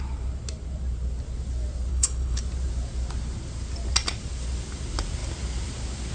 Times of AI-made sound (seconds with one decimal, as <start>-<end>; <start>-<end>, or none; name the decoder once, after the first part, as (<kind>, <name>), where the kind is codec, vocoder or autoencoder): 1.9-2.4 (codec, HILCodec)